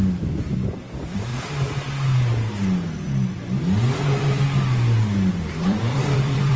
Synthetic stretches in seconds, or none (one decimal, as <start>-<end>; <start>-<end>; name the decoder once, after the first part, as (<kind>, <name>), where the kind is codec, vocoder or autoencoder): 0.0-1.3 (vocoder, BigVGAN v2); 5.3-6.6